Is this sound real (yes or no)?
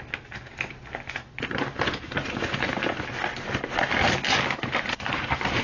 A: yes